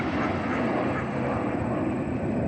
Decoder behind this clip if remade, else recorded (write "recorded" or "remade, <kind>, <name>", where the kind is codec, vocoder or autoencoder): recorded